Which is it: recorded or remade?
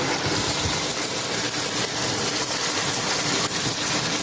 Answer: recorded